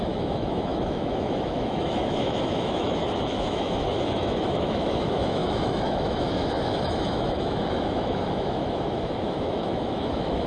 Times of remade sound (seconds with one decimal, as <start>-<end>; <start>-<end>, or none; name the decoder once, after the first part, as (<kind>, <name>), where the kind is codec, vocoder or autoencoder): 0.0-10.5 (autoencoder, DAC-VAE)